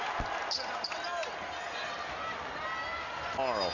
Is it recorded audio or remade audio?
recorded